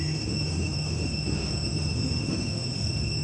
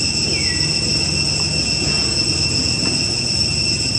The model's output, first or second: first